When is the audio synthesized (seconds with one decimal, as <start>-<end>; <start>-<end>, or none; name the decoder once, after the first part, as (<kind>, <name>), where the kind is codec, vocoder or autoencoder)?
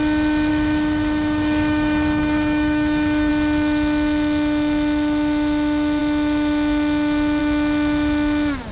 0.5-3.3 (autoencoder, DAC-VAE)